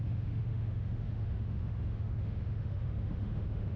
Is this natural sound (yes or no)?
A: no